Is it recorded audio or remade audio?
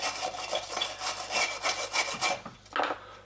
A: recorded